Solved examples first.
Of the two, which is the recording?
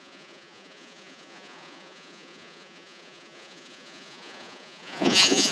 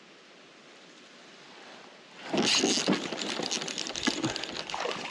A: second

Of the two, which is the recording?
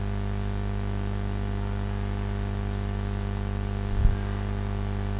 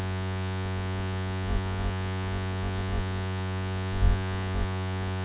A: first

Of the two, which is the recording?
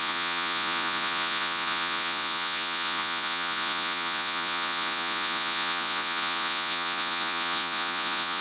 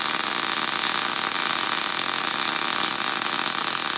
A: second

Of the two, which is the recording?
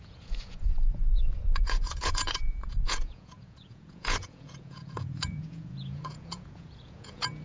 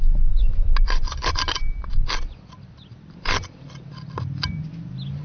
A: second